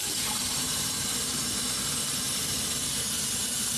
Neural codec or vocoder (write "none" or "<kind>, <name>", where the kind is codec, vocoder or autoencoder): none